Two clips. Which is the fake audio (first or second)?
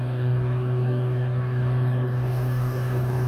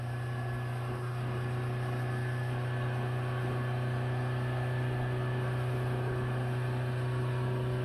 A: first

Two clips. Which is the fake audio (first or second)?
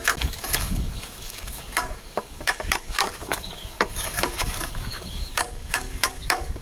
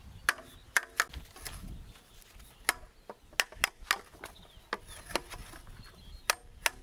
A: first